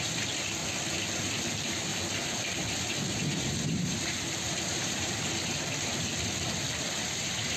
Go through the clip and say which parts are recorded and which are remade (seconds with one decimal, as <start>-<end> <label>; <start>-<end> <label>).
0.0-0.6 remade; 0.6-1.5 recorded; 1.5-1.9 remade; 1.9-3.3 recorded; 3.3-6.1 remade; 6.1-6.9 recorded; 6.9-7.6 remade